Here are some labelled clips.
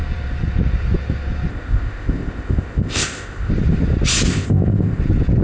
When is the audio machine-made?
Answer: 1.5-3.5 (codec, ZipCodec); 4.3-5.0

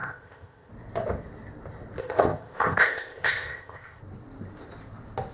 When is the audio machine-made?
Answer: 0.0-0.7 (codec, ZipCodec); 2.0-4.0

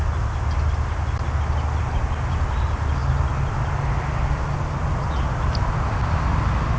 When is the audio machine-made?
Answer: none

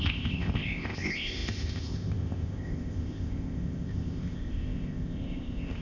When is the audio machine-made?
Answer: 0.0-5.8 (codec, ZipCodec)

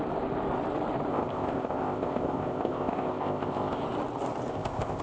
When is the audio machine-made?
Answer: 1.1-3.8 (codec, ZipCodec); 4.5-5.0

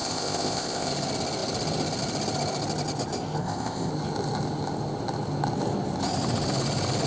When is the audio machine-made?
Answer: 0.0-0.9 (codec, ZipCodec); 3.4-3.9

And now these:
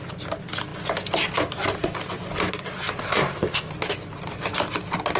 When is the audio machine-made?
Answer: 3.0-3.7 (codec, ZipCodec)